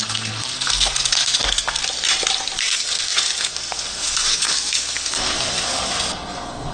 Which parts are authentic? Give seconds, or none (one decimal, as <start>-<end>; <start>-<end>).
1.8-2.6